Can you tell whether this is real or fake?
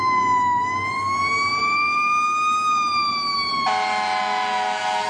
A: real